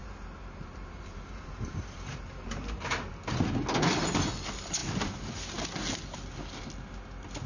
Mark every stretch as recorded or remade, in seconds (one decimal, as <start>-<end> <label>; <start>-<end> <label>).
0.0-3.1 remade; 3.1-7.5 recorded